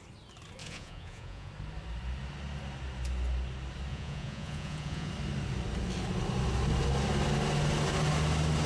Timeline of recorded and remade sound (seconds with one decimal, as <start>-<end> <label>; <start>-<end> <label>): 0.0-0.6 recorded; 0.6-1.5 remade; 1.5-3.9 recorded; 3.9-5.1 remade; 5.1-8.7 recorded